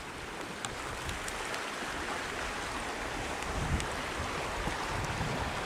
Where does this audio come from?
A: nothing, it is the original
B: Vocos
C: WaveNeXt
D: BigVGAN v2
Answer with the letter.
A